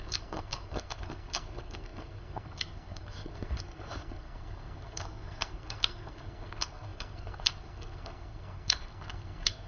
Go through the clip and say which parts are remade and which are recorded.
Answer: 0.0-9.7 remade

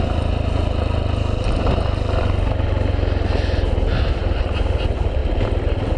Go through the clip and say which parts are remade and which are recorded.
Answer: 0.0-6.0 recorded

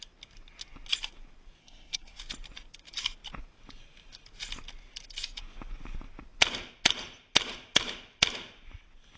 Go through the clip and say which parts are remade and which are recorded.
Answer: 0.0-1.6 recorded; 1.6-2.2 remade; 2.2-9.2 recorded

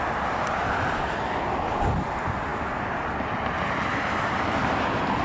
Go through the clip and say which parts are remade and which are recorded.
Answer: 0.0-5.2 recorded

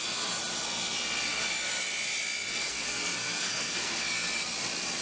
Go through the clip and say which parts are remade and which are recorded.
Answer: 0.0-2.5 recorded; 2.5-4.0 remade; 4.0-5.0 recorded